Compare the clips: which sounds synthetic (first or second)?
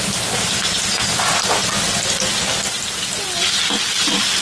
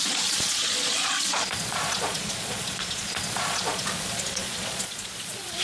second